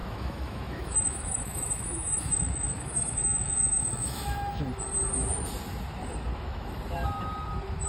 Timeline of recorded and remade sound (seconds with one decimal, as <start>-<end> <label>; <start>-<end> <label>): 0.0-4.6 remade; 4.6-6.3 recorded; 6.3-6.8 remade; 6.8-7.9 recorded